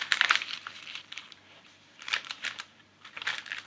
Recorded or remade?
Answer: remade